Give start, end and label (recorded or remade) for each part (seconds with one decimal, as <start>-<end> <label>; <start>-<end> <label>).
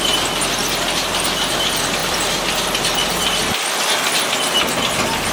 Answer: 0.0-5.3 recorded